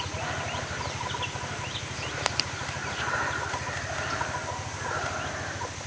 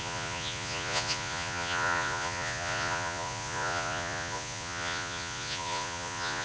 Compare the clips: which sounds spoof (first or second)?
second